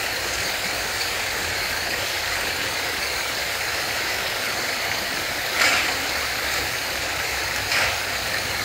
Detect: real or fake fake